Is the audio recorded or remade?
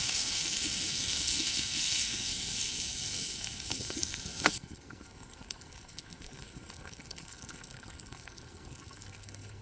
remade